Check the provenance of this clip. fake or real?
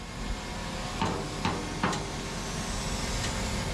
real